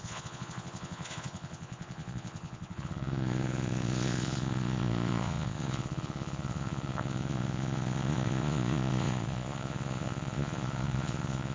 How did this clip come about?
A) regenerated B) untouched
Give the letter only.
A